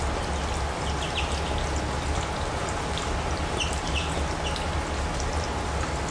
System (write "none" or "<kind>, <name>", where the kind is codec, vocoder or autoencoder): none